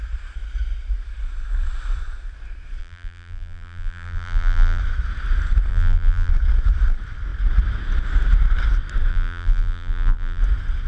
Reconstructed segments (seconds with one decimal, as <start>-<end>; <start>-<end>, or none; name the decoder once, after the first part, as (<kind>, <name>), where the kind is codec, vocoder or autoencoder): 2.8-4.8 (vocoder, BigVGAN v2); 5.7-6.3; 9.1-10.4